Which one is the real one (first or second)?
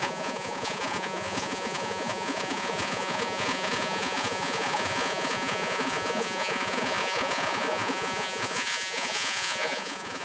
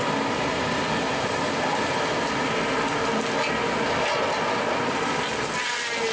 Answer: second